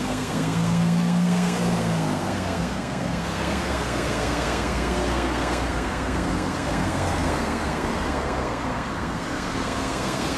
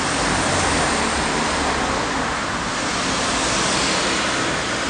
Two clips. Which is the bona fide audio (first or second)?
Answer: second